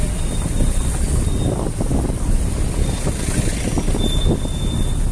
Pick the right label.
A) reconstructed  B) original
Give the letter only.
B